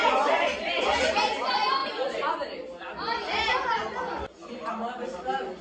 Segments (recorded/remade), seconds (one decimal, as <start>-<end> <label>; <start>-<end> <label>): 0.0-0.9 remade; 0.9-5.6 recorded